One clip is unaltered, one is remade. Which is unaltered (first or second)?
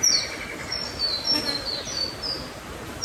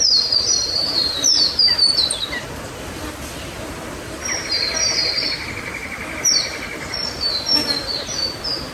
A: first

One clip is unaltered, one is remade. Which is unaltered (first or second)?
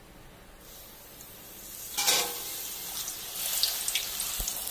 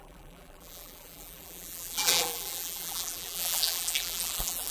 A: first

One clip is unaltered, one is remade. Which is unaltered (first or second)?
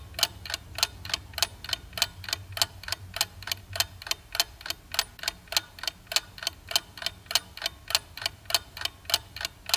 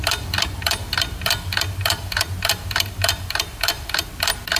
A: first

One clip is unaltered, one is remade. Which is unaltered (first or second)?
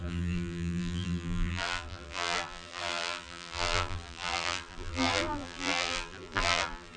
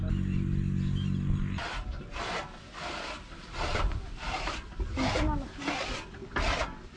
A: second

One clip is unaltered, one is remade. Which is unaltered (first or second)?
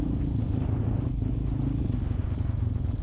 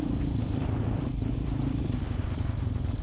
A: first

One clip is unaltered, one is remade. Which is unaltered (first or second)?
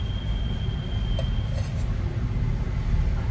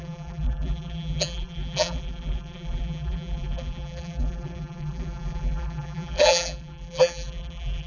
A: first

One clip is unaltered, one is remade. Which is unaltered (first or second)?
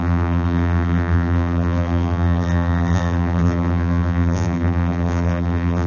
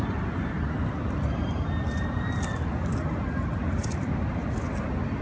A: second